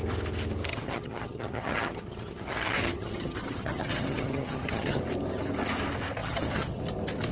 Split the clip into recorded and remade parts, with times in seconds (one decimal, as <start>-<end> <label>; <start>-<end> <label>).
0.0-0.7 recorded; 0.7-5.0 remade; 5.0-6.2 recorded; 6.2-6.8 remade; 6.8-7.3 recorded